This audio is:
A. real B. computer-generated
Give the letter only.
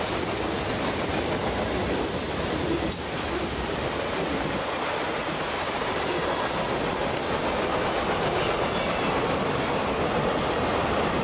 A